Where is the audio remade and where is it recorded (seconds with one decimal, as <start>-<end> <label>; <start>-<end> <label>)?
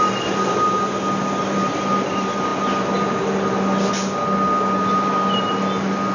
0.0-6.1 recorded